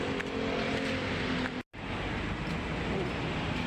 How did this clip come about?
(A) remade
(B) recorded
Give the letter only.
B